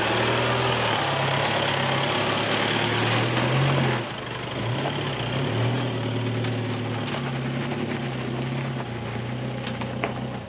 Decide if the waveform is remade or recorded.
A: recorded